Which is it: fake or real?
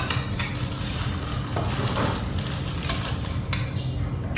real